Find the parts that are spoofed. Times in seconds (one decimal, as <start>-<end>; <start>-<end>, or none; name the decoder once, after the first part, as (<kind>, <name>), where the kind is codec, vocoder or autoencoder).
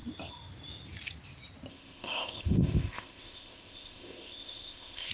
1.7-5.1 (codec, ZipCodec)